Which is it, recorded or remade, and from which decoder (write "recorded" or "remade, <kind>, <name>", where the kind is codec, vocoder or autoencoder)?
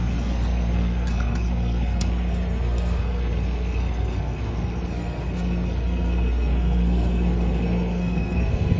remade, codec, SNAC